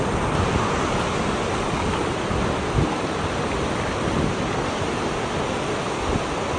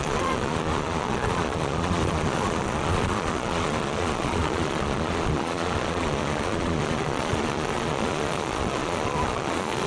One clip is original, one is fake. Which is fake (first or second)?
second